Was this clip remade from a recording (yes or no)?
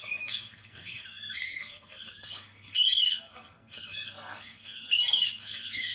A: yes